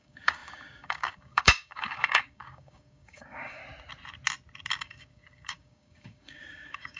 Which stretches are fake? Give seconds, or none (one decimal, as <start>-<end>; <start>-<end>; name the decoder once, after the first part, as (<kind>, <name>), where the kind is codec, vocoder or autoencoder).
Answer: 0.0-3.6 (codec, DAC); 4.8-7.0